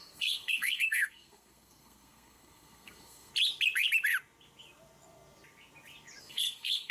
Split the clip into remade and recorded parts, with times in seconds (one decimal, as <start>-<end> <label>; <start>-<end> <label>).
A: 0.0-3.3 remade; 3.3-6.2 recorded; 6.2-6.9 remade